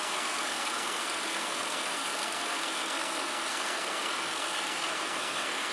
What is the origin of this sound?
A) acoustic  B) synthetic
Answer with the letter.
B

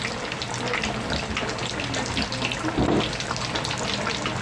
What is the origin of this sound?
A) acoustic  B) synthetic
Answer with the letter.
A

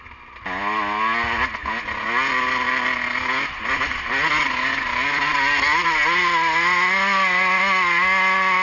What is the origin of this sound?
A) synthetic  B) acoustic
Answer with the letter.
B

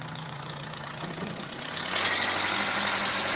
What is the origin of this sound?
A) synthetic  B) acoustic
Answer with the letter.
A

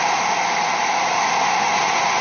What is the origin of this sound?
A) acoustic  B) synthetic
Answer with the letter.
A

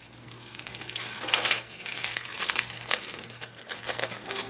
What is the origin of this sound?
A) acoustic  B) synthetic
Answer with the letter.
B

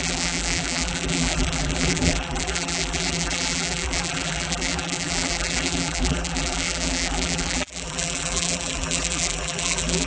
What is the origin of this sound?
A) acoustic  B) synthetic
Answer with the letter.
B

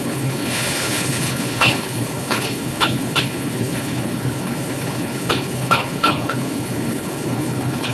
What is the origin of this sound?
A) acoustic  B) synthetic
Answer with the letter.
B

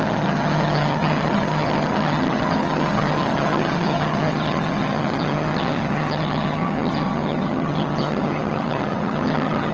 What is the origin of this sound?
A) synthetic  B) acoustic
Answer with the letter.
A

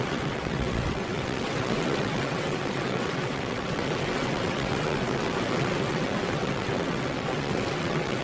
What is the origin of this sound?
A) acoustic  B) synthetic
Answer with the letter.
B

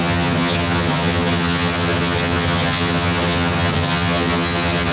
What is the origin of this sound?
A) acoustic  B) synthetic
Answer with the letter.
B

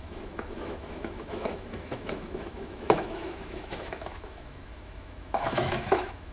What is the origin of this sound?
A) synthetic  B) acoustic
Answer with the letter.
A